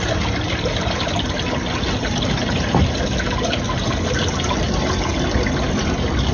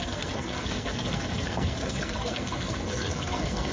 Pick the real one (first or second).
first